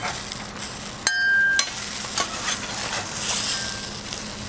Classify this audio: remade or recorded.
recorded